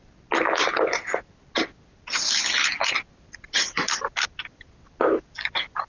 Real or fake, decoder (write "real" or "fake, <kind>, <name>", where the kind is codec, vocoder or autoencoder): real